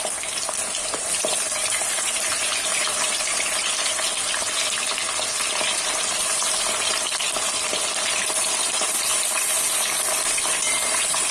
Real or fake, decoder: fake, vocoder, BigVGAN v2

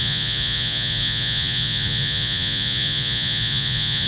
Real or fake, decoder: fake, vocoder, Vocos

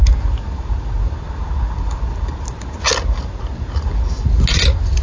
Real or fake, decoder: real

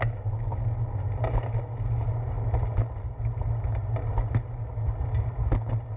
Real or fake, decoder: real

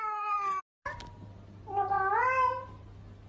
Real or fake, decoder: real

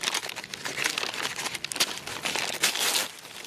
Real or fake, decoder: real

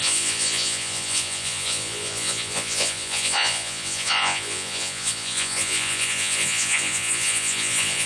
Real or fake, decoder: fake, vocoder, Vocos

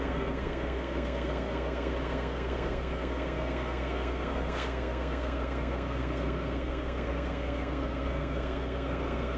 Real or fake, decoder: fake, codec, SNAC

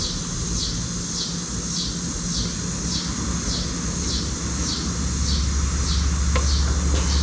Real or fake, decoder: real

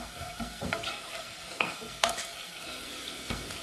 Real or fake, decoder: fake, codec, SNAC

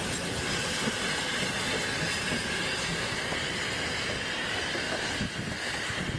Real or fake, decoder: real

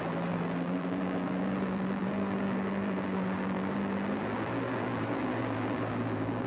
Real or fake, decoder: fake, vocoder, BigVGAN v2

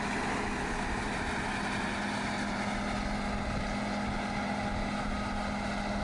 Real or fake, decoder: real